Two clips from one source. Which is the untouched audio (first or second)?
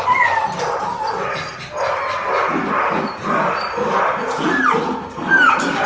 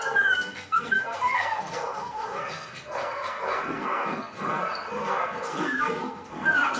first